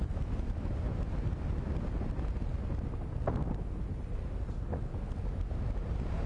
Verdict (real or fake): real